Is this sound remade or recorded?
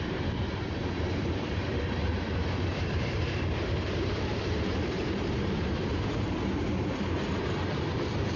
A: remade